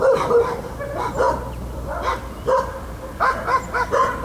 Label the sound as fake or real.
fake